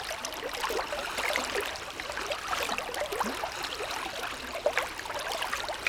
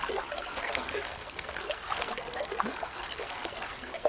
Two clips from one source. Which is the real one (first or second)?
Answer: first